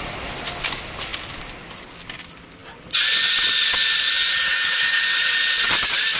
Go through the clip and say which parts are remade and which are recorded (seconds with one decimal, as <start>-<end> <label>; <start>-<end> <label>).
0.0-4.5 recorded; 4.5-5.0 remade; 5.0-6.2 recorded